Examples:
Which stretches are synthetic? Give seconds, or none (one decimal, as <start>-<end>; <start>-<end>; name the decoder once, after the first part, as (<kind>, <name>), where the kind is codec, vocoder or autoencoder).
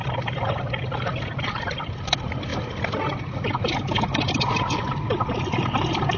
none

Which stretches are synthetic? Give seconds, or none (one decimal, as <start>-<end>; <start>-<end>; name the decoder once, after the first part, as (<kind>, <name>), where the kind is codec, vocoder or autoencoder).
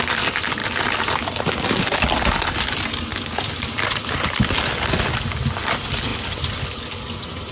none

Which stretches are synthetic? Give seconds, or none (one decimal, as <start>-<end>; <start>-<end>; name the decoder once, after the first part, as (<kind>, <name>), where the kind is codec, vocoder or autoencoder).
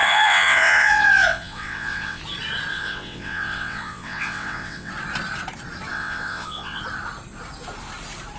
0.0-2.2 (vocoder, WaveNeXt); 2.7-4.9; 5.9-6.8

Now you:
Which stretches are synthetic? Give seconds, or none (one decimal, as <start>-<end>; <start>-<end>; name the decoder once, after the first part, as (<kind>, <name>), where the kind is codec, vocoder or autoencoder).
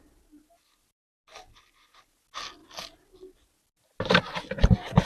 none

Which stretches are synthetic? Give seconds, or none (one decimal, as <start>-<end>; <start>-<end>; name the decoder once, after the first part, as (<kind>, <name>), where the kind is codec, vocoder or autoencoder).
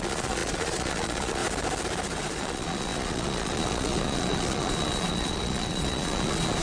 0.0-1.4 (vocoder, Vocos); 2.4-6.6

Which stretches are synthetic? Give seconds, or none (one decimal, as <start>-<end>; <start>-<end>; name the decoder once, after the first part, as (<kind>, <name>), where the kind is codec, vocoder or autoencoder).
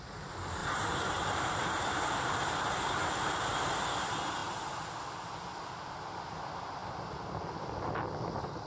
0.6-1.8 (vocoder, BigVGAN v2)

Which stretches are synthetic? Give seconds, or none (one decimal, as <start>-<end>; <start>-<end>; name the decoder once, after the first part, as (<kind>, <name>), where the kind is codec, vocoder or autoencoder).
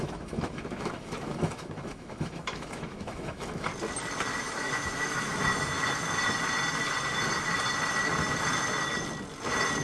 0.0-3.7 (autoencoder, DAC-VAE); 4.4-5.8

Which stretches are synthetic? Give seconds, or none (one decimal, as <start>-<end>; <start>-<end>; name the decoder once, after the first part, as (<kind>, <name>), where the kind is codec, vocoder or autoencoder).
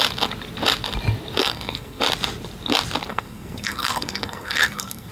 1.4-2.0 (codec, SNAC); 3.1-5.1